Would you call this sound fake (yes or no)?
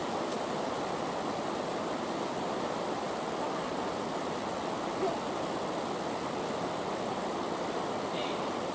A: no